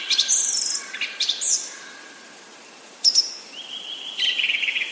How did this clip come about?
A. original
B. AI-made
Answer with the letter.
B